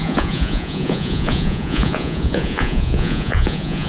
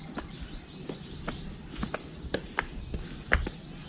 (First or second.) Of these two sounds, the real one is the second